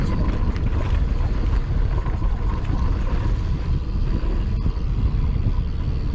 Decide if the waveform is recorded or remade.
recorded